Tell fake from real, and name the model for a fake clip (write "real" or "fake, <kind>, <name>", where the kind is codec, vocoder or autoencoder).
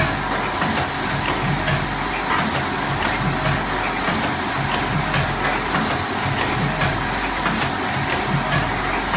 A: real